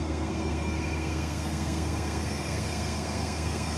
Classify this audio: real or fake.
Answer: fake